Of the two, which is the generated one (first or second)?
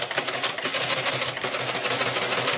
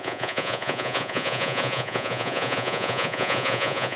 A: second